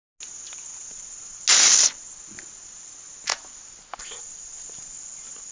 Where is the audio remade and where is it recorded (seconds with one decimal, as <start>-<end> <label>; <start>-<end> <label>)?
0.0-5.5 recorded